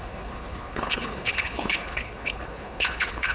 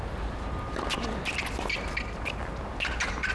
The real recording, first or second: second